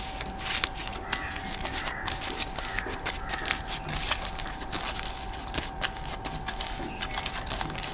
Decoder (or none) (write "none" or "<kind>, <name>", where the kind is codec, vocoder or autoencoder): none